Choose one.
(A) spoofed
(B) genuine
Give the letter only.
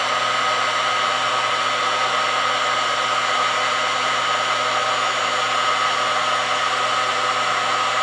B